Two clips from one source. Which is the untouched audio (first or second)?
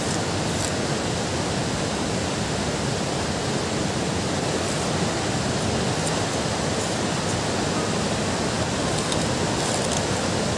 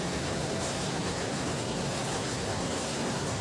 first